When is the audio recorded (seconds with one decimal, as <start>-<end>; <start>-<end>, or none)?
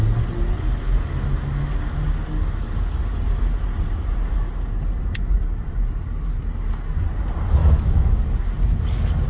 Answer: 0.0-7.6; 8.2-9.3